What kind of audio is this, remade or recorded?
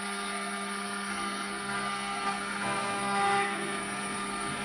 remade